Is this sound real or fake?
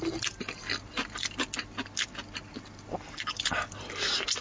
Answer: real